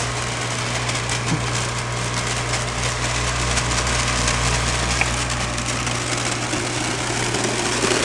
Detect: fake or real real